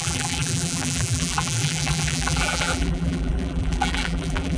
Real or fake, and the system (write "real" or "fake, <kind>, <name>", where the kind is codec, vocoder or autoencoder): fake, vocoder, BigVGAN v2